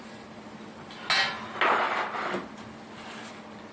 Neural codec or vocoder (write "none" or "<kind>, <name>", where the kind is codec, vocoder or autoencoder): none